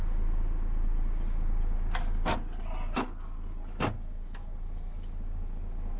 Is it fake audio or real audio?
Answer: real